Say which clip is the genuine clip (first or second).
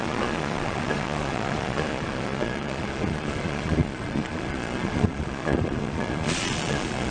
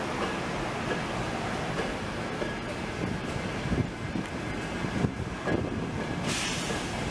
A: second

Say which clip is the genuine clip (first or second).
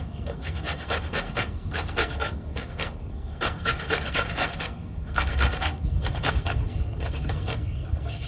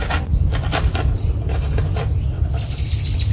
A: second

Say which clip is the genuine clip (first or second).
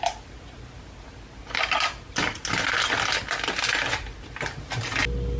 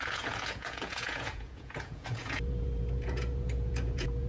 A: first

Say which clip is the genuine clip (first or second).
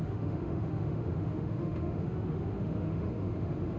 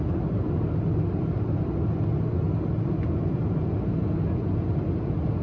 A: second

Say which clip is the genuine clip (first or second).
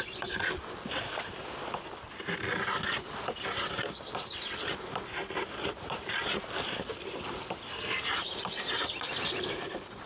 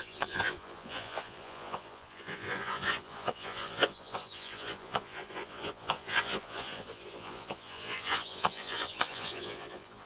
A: first